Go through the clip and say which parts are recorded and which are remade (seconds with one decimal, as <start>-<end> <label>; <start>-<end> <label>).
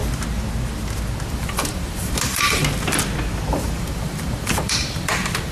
0.0-1.3 recorded; 1.3-2.6 remade; 2.6-3.5 recorded; 3.5-5.5 remade